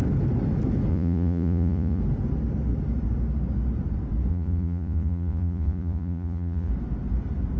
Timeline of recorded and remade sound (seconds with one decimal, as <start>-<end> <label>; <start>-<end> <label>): 0.0-0.9 recorded; 0.9-2.0 remade; 2.0-4.3 recorded; 4.3-6.7 remade; 6.7-7.6 recorded